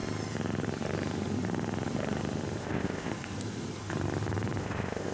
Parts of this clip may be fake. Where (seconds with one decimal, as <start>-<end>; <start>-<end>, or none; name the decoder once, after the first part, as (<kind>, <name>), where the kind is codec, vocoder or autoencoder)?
2.6-3.1 (codec, ZipCodec); 4.6-5.1